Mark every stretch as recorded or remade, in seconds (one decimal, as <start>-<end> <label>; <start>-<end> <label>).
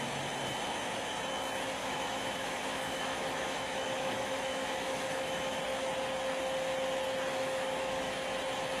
0.0-1.8 recorded; 1.8-5.6 remade; 5.6-7.3 recorded; 7.3-8.1 remade; 8.1-8.8 recorded